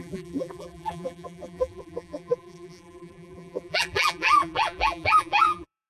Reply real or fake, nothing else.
fake